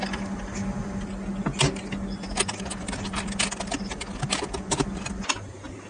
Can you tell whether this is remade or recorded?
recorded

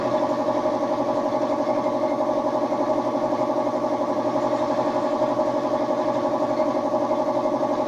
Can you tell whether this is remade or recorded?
recorded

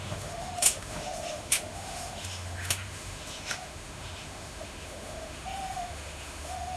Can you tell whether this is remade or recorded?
remade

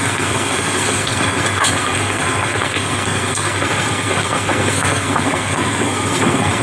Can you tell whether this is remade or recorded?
remade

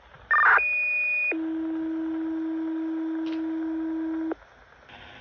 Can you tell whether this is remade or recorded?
recorded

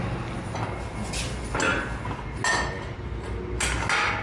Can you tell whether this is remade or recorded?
recorded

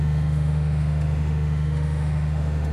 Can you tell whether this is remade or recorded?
remade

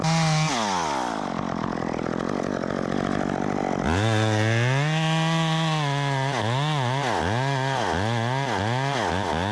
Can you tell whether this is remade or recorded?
recorded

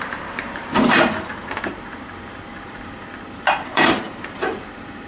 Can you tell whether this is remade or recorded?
remade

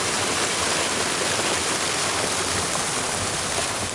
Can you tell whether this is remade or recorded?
recorded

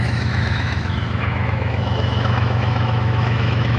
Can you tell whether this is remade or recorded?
remade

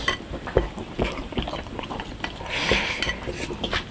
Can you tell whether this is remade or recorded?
recorded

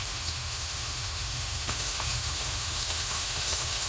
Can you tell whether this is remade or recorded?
remade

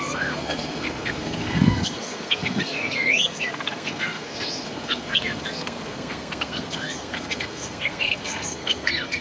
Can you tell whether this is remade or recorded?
remade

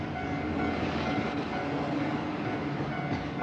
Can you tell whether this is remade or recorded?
remade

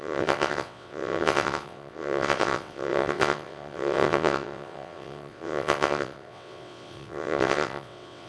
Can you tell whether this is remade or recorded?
remade